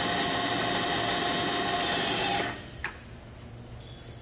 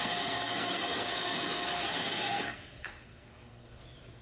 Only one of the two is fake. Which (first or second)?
second